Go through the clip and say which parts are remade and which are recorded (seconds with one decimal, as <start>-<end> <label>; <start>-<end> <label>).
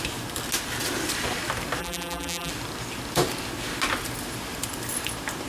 0.0-1.8 recorded; 1.8-2.5 remade; 2.5-5.5 recorded